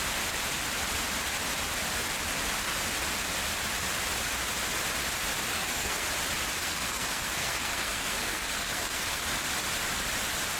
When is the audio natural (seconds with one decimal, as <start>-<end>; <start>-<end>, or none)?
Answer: 0.0-5.5; 6.1-6.6; 9.2-10.6